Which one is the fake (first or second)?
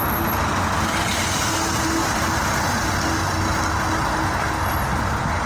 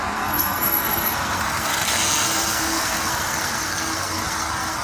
second